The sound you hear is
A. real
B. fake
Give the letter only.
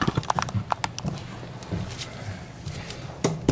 A